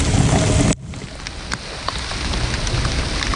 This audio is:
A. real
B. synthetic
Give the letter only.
A